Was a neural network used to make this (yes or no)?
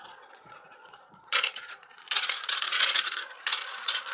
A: yes